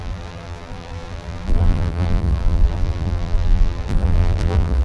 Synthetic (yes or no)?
yes